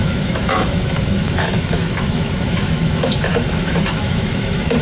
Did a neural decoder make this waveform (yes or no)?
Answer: yes